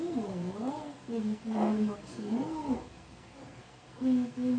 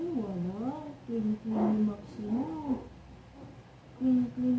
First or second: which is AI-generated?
first